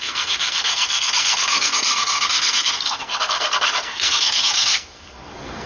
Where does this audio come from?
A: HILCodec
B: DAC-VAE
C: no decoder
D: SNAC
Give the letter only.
D